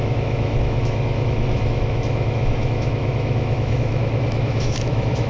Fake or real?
fake